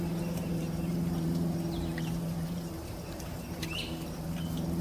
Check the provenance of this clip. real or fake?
fake